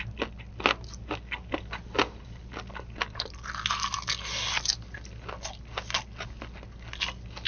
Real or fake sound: real